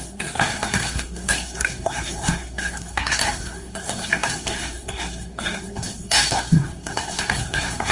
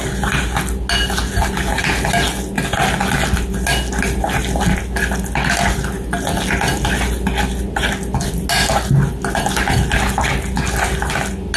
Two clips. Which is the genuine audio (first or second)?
second